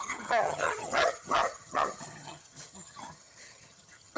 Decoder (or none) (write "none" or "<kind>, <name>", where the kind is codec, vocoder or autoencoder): vocoder, HiFi-GAN